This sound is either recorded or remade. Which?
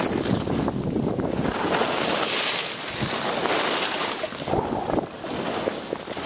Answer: recorded